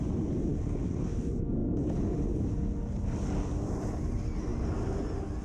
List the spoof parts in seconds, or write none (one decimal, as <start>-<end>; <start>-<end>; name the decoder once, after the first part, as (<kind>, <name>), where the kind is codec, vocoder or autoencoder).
none